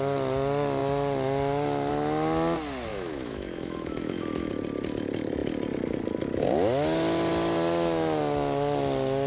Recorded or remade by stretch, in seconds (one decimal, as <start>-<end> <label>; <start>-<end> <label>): 0.0-2.9 recorded; 2.9-4.5 remade; 4.5-9.3 recorded